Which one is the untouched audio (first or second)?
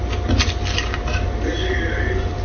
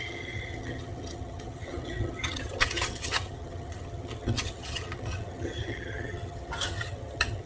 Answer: first